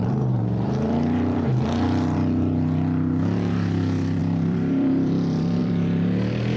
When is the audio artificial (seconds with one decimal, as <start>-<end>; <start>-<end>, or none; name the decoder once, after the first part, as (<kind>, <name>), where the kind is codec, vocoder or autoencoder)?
0.0-6.6 (vocoder, BigVGAN v2)